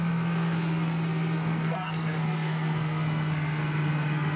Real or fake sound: fake